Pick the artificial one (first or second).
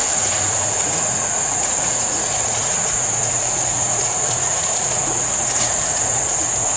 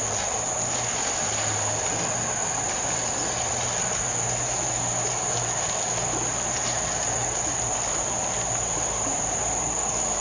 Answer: first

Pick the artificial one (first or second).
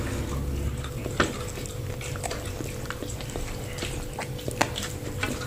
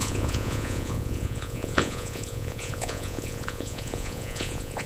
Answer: second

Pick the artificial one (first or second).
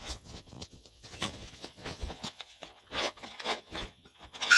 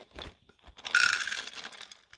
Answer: first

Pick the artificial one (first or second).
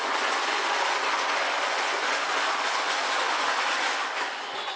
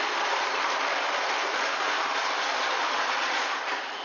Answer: first